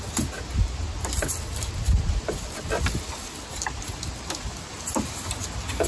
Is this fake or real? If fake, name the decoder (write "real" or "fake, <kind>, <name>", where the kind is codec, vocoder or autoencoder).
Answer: real